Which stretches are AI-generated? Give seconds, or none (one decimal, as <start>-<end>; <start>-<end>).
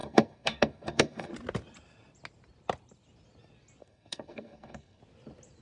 0.0-1.3; 3.8-5.0